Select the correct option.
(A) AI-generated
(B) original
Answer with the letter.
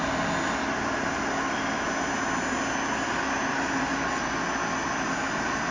B